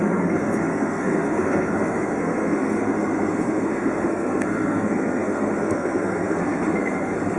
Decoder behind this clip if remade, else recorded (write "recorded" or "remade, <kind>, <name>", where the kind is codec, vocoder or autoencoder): remade, codec, SNAC